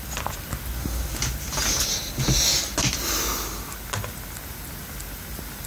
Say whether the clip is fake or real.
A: real